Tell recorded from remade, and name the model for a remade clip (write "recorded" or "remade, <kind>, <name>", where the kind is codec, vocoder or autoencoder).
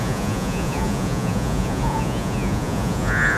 remade, vocoder, Vocos